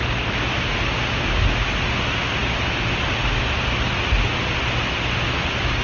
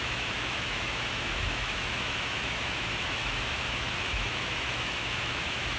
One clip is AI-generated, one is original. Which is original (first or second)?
first